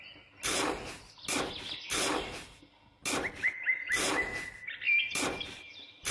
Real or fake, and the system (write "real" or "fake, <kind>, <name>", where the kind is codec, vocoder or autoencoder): real